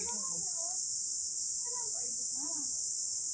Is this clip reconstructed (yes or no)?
no